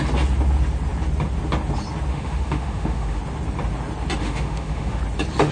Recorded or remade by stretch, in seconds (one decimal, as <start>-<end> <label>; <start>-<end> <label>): 0.0-2.1 recorded; 2.1-3.2 remade; 3.2-4.2 recorded; 4.2-5.0 remade; 5.0-5.5 recorded